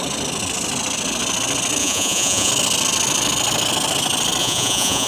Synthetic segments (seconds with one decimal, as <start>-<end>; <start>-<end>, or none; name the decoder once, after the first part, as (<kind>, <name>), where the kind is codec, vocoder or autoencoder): 1.8-2.5 (vocoder, Vocos); 4.4-5.1